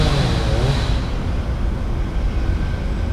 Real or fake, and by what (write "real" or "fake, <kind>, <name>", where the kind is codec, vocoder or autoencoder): real